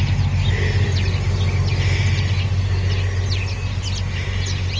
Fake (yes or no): no